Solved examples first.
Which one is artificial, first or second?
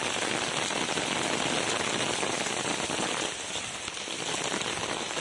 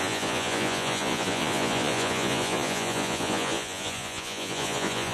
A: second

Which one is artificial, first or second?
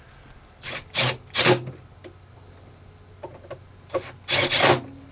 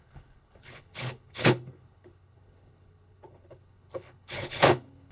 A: second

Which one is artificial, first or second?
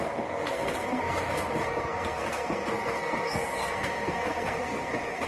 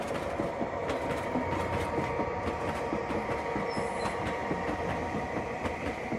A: first